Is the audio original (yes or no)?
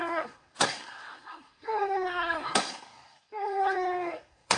no